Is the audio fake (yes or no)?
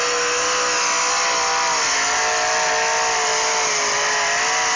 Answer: no